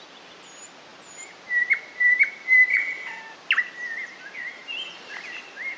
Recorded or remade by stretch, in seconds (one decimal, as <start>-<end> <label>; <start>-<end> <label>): 0.0-2.7 recorded; 2.7-3.2 remade; 3.2-5.8 recorded